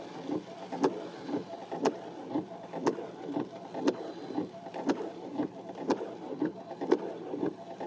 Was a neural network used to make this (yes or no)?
no